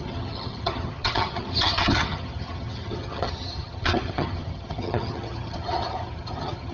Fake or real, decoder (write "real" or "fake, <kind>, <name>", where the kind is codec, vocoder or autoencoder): fake, vocoder, HiFi-GAN